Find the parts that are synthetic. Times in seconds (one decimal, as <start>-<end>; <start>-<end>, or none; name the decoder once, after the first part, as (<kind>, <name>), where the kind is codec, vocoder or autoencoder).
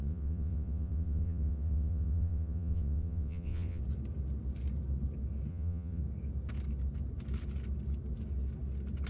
0.0-3.8 (vocoder, WaveNeXt); 5.5-6.0